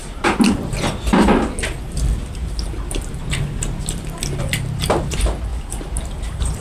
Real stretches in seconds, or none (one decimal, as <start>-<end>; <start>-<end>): 1.0-2.4; 3.8-5.5